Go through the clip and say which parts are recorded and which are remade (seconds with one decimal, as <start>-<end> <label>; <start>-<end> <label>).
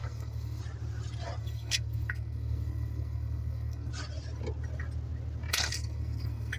0.0-0.6 remade; 0.6-1.4 recorded; 1.4-3.9 remade; 3.9-5.5 recorded; 5.5-6.6 remade